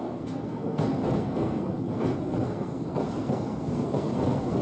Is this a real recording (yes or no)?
no